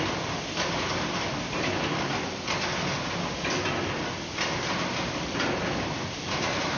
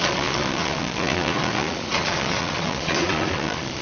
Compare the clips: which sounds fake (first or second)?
second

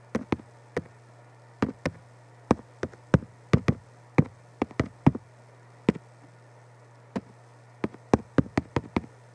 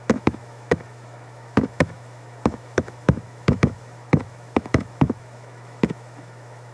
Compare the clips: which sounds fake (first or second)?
second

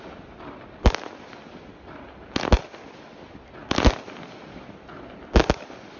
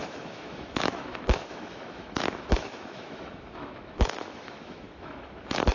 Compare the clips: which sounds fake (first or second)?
second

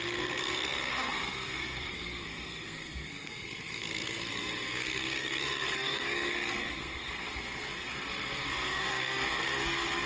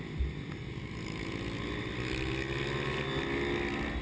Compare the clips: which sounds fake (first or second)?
first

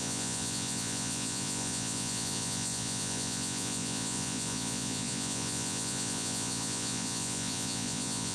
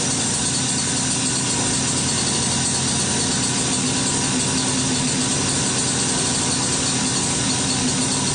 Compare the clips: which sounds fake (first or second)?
first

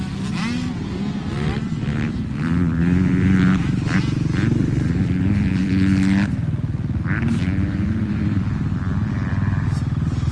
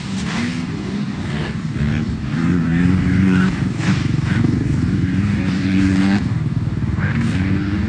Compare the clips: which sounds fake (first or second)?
second